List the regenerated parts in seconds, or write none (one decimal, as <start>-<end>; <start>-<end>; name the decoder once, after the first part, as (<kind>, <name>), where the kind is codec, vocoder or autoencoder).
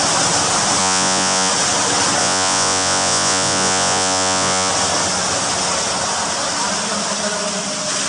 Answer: 0.8-1.5 (vocoder, Vocos); 2.2-4.7